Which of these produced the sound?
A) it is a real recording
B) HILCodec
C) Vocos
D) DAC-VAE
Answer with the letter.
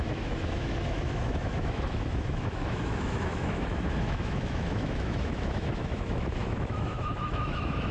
D